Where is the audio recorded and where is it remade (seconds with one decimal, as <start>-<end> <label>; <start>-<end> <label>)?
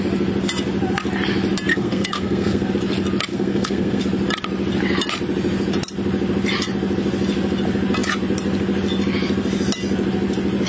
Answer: 0.0-1.7 recorded; 1.7-2.7 remade; 2.7-3.3 recorded; 3.3-4.0 remade; 4.0-10.7 recorded